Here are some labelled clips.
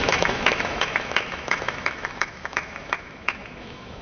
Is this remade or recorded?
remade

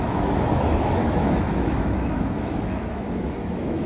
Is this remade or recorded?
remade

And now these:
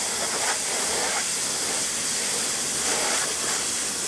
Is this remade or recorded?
recorded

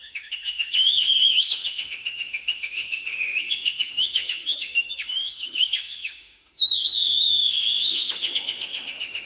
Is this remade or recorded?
remade